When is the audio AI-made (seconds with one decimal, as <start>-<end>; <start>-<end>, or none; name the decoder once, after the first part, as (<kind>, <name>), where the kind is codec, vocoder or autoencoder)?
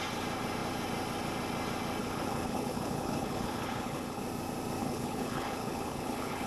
2.0-4.2 (codec, HILCodec); 4.8-6.5